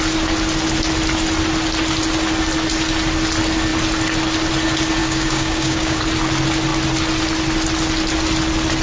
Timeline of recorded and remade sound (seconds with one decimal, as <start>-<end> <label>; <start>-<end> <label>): 0.0-5.0 recorded; 5.0-6.0 remade; 6.0-8.8 recorded